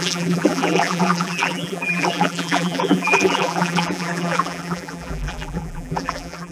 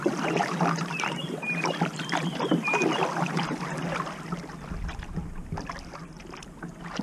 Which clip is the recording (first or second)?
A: second